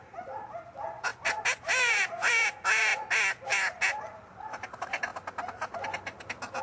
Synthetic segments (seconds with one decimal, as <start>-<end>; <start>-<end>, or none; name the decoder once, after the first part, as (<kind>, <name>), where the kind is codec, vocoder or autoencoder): none

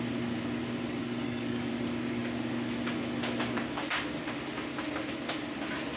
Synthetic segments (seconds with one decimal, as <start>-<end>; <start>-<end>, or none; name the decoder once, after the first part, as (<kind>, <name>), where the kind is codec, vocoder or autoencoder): 1.0-1.7 (codec, DAC)

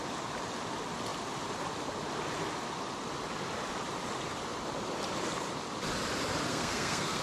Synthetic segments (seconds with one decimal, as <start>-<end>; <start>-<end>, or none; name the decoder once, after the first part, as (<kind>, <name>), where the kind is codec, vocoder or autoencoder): 6.5-7.2 (codec, SNAC)

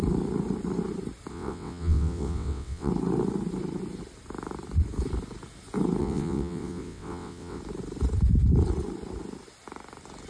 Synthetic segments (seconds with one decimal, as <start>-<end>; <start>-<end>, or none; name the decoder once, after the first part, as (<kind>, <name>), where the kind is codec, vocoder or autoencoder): 1.3-2.9 (vocoder, WaveNeXt); 6.0-7.6

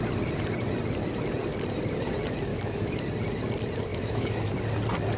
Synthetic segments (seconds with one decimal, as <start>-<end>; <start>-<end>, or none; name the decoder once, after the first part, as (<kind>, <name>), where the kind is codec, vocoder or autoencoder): 2.5-3.0 (autoencoder, DAC-VAE); 3.9-4.5

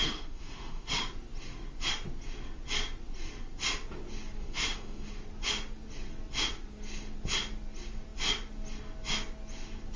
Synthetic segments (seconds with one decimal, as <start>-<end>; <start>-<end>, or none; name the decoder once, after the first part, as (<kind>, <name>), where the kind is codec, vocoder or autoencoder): 0.0-0.9 (autoencoder, DAC-VAE); 4.4-5.1

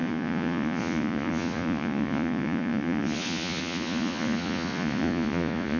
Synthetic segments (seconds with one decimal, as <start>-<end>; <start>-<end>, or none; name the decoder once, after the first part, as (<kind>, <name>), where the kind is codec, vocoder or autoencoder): 0.0-5.8 (vocoder, Vocos)